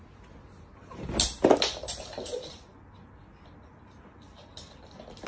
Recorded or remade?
recorded